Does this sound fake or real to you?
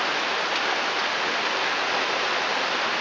real